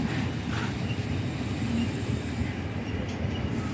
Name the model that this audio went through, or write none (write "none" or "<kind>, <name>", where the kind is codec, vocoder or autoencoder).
vocoder, BigVGAN v2